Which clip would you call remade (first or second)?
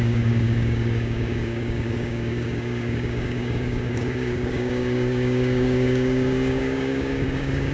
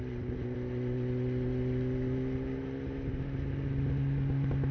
first